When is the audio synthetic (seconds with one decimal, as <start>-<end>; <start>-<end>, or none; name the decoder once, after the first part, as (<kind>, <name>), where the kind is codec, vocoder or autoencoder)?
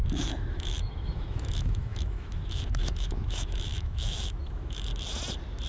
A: 0.0-4.9 (autoencoder, DAC-VAE)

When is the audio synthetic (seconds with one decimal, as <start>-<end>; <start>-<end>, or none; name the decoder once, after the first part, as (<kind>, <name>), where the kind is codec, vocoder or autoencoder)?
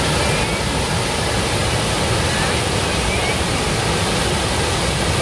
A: none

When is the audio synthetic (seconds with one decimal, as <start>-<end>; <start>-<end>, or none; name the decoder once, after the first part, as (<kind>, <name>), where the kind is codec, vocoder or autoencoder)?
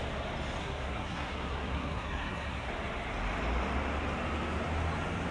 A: 0.6-2.7 (codec, SNAC)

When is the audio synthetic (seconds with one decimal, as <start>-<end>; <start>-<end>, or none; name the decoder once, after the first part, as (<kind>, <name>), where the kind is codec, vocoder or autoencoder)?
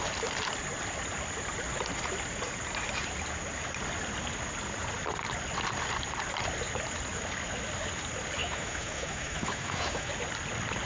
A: 8.4-10.1 (autoencoder, DAC-VAE)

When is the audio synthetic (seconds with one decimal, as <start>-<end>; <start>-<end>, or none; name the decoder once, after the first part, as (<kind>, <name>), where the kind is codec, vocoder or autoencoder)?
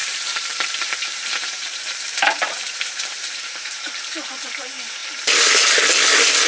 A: 0.0-3.9 (vocoder, BigVGAN v2)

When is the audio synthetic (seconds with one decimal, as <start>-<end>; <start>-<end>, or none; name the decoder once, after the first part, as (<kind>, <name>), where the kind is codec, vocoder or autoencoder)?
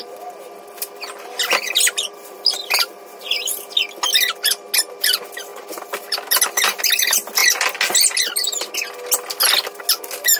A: 2.5-3.5 (vocoder, BigVGAN v2)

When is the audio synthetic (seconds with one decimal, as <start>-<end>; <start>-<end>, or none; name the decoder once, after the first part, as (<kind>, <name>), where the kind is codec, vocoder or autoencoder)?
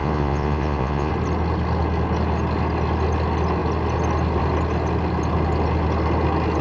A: 0.0-1.1 (vocoder, Vocos)